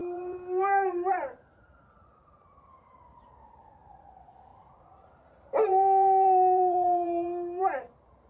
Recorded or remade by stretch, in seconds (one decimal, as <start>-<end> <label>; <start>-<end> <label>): 0.0-3.6 remade; 3.6-4.5 recorded; 4.5-8.3 remade